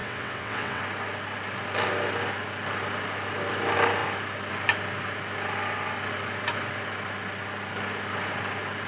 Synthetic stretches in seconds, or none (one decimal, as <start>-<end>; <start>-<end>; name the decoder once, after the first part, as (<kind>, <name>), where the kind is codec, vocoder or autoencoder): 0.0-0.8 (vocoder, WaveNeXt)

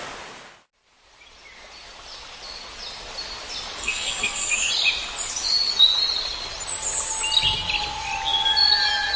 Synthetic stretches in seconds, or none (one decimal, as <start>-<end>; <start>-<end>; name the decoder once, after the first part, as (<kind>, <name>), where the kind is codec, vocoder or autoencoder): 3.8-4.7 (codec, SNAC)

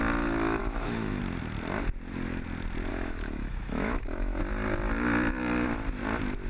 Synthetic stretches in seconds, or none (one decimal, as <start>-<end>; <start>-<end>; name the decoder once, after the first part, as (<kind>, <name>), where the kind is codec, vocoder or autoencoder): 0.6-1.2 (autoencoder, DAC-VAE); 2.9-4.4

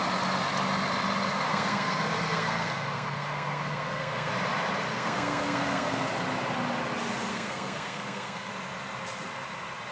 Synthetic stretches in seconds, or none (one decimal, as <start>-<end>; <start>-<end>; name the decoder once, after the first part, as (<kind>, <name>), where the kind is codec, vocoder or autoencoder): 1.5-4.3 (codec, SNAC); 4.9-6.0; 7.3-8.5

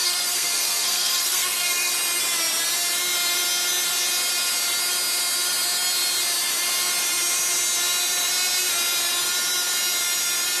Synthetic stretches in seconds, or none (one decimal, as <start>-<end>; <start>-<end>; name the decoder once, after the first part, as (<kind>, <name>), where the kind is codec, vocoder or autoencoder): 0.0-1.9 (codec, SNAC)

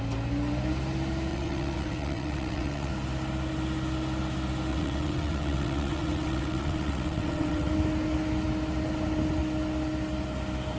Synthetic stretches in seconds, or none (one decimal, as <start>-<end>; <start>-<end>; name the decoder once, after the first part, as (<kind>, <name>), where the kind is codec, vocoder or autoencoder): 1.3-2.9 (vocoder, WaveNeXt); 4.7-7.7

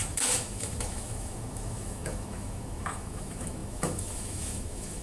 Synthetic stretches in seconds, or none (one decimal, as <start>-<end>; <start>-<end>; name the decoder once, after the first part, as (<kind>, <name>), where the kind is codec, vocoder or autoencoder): 0.0-5.0 (autoencoder, DAC-VAE)

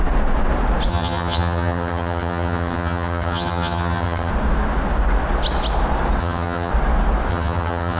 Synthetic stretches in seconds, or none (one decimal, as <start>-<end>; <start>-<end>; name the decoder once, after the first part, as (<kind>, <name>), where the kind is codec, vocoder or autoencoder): 0.9-4.3 (vocoder, HiFi-GAN); 6.2-6.7; 7.3-8.0